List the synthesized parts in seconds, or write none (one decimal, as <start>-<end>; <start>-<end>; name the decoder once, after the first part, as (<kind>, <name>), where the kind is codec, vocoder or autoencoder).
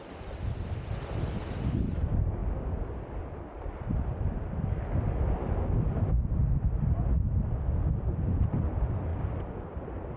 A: none